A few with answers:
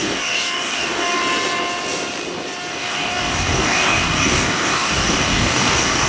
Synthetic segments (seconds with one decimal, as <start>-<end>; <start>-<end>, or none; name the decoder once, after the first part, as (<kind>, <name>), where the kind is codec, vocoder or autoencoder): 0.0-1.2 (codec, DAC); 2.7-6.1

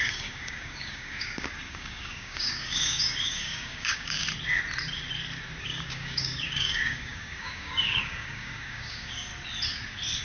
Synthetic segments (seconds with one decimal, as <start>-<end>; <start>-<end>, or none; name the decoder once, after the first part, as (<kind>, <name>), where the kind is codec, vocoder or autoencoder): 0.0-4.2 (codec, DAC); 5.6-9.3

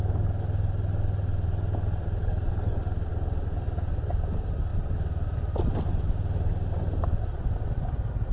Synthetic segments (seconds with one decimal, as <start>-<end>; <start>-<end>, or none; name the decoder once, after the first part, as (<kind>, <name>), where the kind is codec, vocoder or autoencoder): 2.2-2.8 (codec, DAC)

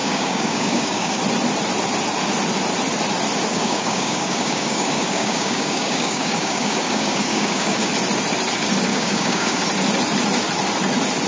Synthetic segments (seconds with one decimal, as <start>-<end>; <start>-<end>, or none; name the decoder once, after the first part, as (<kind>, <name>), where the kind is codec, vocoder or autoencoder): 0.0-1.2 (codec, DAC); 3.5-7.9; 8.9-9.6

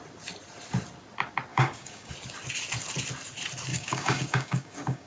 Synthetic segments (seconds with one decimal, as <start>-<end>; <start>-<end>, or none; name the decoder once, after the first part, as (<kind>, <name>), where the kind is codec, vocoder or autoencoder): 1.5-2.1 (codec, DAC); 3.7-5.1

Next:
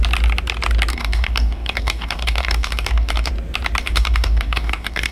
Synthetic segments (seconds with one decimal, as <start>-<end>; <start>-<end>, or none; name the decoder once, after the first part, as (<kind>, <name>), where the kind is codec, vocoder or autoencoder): 0.9-3.3 (codec, DAC); 3.8-5.1